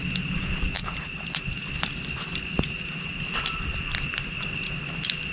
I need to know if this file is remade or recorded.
recorded